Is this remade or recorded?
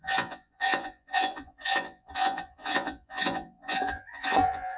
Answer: remade